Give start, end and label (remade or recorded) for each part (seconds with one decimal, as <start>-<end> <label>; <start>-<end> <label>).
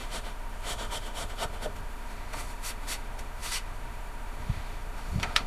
0.0-5.5 remade